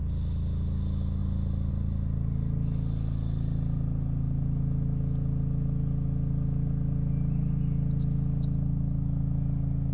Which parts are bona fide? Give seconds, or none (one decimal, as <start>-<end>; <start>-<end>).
0.0-9.9